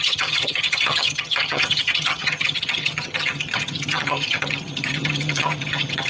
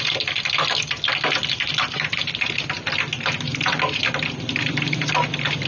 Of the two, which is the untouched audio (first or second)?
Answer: second